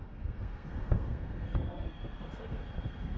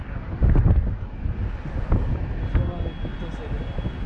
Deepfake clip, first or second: first